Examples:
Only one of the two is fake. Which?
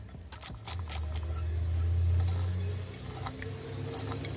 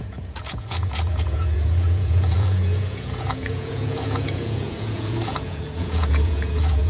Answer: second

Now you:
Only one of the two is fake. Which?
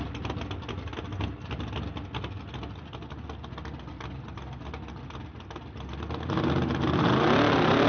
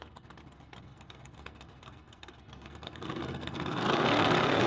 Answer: second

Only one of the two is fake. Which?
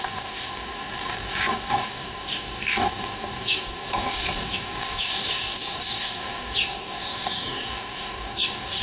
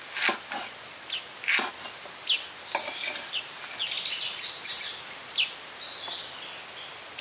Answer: first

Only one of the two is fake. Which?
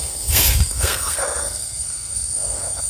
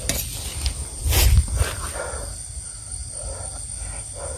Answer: first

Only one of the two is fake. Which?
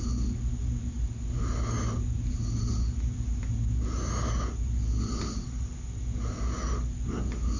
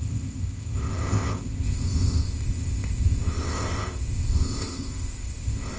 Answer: second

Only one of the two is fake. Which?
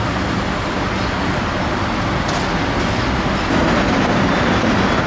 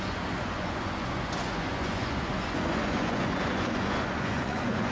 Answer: second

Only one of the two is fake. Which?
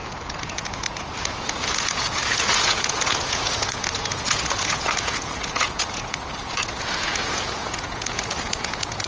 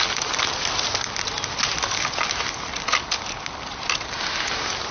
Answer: first